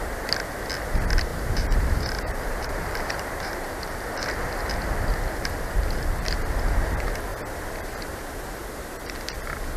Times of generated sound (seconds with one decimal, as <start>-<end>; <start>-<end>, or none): 1.3-6.5